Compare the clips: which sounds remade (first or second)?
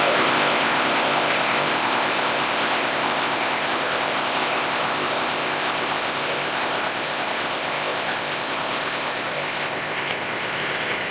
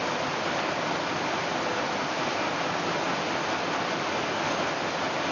first